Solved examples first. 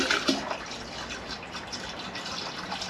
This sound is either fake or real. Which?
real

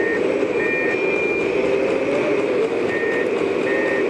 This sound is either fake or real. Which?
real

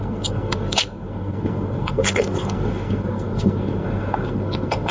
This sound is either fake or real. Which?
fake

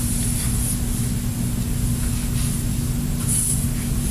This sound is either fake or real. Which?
real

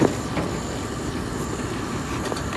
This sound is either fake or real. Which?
real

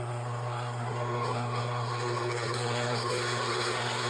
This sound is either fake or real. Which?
fake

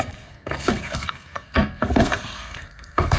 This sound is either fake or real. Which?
fake